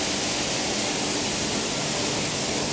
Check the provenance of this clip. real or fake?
real